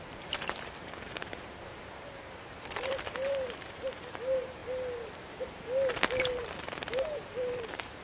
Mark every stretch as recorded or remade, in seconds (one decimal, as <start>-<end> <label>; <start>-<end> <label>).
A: 0.0-4.6 remade; 4.6-6.2 recorded; 6.2-8.0 remade